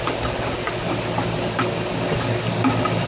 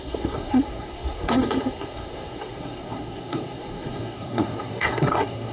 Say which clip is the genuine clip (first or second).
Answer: first